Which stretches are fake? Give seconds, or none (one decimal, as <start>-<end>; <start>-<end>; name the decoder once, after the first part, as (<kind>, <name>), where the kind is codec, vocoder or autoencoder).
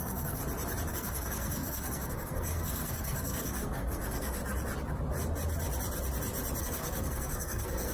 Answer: 0.0-0.4 (codec, SNAC); 0.9-4.4; 6.6-7.9